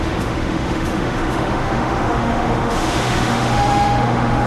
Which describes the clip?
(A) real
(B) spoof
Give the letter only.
B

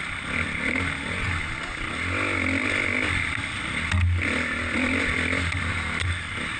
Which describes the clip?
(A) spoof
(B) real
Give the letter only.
B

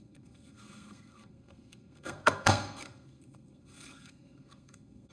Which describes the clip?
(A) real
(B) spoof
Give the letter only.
B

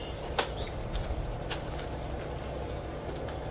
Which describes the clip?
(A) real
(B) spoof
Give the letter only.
A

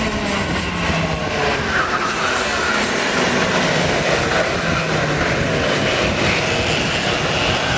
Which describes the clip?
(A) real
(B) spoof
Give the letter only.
A